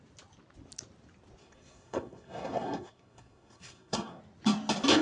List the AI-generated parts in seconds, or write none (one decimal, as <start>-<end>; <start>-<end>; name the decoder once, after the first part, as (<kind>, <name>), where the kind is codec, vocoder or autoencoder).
1.4-4.2 (codec, SNAC)